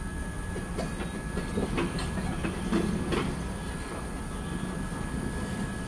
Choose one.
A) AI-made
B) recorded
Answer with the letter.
B